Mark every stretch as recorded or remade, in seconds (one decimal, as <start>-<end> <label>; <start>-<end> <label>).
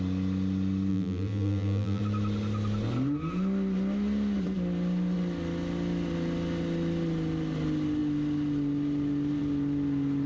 0.0-0.9 recorded; 0.9-2.0 remade; 2.0-10.3 recorded